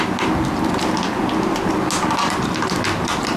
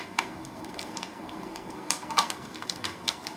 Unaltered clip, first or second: first